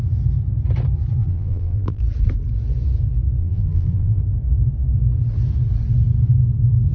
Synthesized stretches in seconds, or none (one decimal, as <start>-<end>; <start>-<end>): 1.2-2.0; 3.4-4.2